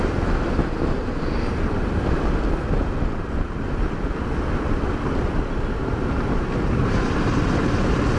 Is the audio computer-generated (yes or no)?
no